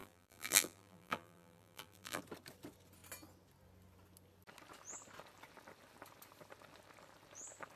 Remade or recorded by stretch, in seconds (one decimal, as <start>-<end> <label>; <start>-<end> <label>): 0.0-2.2 remade; 2.2-7.8 recorded